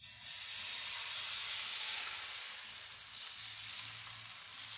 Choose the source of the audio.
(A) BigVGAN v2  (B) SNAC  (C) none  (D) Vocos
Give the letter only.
C